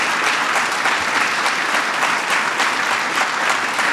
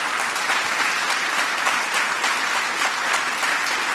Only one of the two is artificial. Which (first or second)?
second